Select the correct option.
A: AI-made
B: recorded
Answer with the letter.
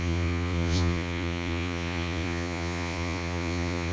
A